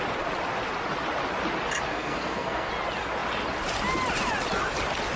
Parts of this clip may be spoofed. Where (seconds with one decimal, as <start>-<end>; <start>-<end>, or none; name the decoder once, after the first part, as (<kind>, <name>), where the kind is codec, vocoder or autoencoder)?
1.9-2.7 (codec, SNAC)